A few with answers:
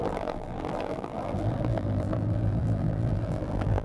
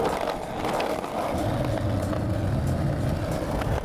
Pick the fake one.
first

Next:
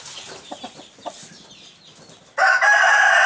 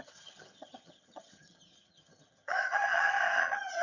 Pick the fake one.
second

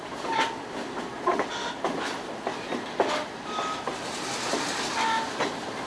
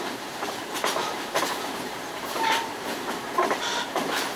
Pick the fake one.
second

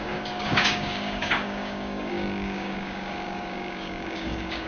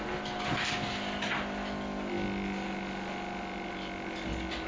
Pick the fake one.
first